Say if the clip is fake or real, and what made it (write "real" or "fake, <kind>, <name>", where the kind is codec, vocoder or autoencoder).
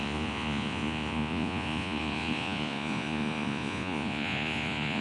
fake, vocoder, Vocos